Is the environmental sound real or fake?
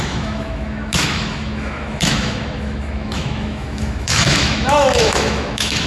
fake